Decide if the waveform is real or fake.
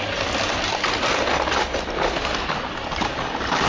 real